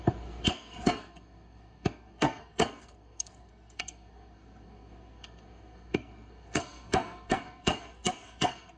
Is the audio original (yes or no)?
no